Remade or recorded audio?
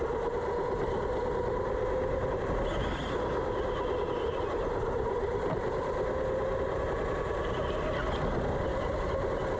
recorded